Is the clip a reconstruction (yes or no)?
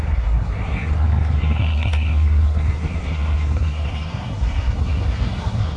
yes